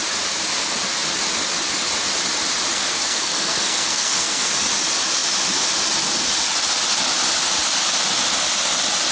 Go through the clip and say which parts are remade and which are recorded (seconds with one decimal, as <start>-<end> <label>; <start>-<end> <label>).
0.0-2.7 recorded; 2.7-4.5 remade; 4.5-9.1 recorded